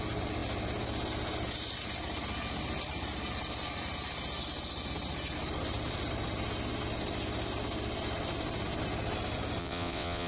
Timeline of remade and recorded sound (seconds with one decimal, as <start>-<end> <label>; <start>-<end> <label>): 0.0-9.6 recorded; 9.6-10.3 remade